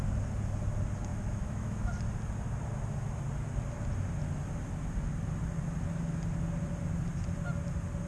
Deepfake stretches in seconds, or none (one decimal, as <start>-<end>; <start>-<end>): 1.1-1.9